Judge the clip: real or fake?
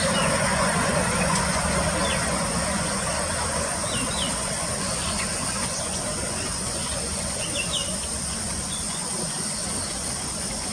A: fake